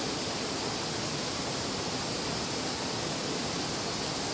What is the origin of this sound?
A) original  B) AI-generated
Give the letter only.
A